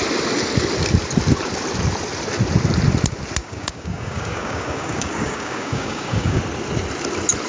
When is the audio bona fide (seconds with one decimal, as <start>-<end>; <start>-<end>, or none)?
0.0-3.4; 6.4-7.5